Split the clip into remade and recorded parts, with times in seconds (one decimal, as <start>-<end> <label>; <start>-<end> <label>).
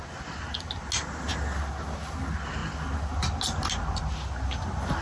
0.0-5.0 recorded